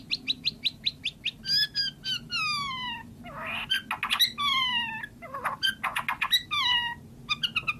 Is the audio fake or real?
real